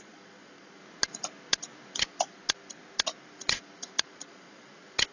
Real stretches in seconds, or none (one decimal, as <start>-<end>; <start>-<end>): 0.8-2.0; 2.4-3.3